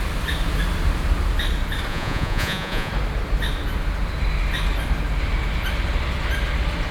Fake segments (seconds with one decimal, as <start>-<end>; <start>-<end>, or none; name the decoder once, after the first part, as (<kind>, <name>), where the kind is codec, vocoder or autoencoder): 1.9-2.9 (vocoder, Vocos)